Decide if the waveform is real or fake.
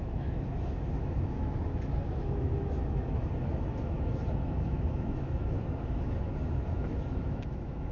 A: fake